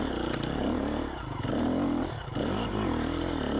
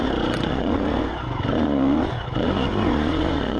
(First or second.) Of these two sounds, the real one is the first